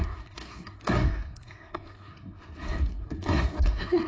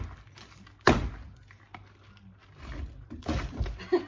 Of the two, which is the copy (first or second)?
first